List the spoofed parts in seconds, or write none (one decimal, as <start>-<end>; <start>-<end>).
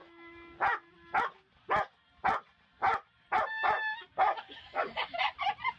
none